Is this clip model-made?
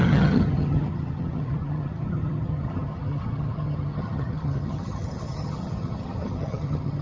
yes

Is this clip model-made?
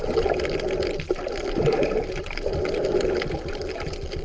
no